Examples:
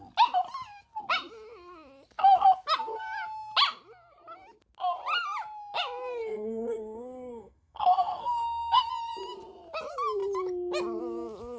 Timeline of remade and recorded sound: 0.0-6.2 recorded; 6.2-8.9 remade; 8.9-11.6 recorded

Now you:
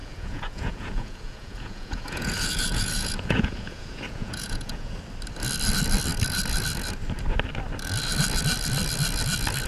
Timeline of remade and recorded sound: 0.0-4.9 remade; 4.9-9.7 recorded

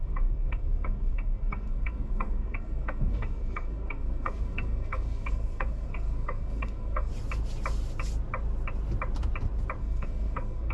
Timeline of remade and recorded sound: 0.0-7.1 remade; 7.1-9.8 recorded; 9.8-10.7 remade